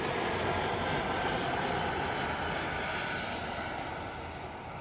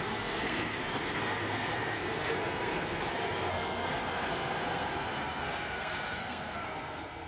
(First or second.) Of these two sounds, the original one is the first